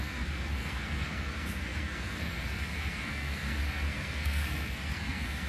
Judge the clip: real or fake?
fake